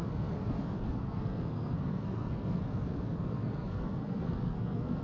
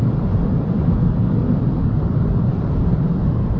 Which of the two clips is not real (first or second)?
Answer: first